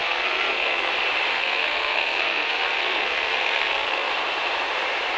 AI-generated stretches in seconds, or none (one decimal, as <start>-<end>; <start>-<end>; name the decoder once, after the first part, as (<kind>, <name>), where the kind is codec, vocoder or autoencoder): 0.0-0.9 (codec, SNAC); 1.3-4.1